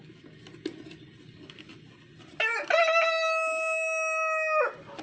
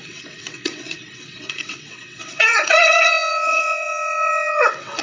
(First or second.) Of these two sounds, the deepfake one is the second